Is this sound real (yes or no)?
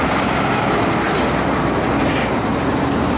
yes